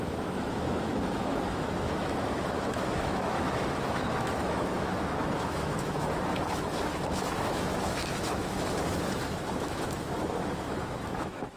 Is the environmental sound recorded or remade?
remade